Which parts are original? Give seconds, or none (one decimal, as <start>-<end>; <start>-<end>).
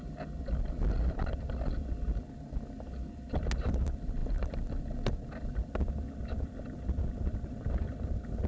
0.0-8.5